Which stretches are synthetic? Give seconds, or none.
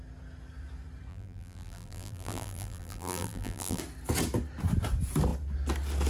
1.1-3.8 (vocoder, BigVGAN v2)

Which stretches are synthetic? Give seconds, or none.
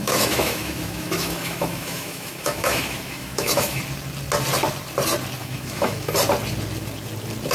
0.0-3.8 (autoencoder, DAC-VAE); 5.4-6.1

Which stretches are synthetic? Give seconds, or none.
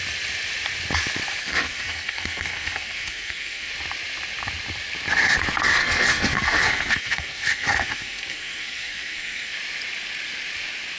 1.4-3.7 (codec, SNAC); 5.8-9.5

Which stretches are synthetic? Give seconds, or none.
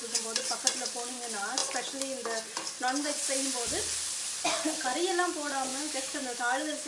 5.7-6.9 (autoencoder, DAC-VAE)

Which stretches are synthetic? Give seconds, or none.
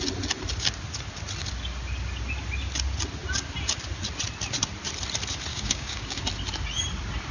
5.5-6.2 (codec, DAC)